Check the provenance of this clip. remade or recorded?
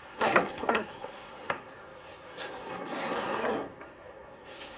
remade